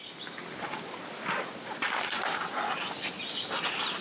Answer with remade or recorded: recorded